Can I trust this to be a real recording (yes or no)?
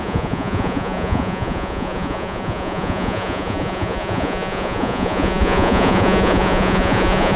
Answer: no